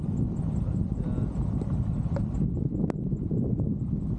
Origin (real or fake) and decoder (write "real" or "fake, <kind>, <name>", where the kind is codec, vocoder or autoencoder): real